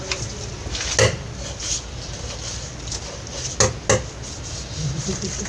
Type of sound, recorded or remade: recorded